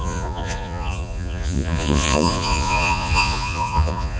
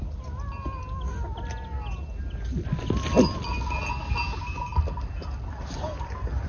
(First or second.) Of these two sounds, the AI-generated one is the first